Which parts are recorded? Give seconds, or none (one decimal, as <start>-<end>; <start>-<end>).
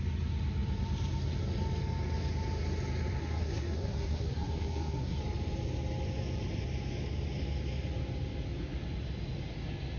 0.0-3.2; 5.2-10.0